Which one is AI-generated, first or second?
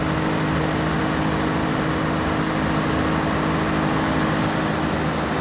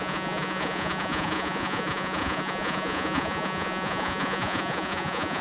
second